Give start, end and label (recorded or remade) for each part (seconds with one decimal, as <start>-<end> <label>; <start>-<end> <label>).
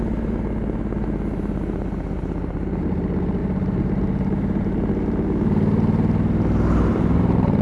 0.0-3.4 recorded; 3.4-4.9 remade; 4.9-6.9 recorded; 6.9-7.6 remade